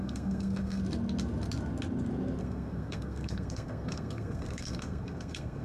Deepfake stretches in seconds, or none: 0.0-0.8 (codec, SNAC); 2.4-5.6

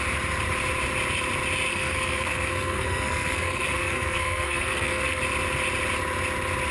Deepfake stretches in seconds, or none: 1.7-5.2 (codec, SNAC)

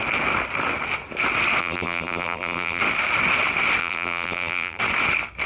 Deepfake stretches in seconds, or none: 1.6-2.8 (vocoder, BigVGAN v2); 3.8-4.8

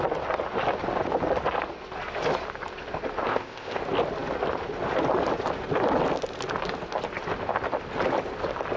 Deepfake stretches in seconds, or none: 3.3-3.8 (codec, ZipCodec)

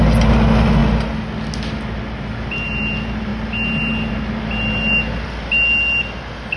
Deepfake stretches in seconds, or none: none